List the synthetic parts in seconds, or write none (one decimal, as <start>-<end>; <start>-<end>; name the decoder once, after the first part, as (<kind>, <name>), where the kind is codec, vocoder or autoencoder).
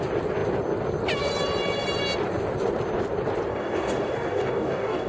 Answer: 3.5-5.1 (codec, DAC)